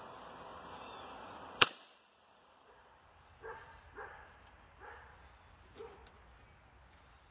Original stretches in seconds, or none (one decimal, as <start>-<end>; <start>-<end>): 0.0-0.5; 4.9-7.3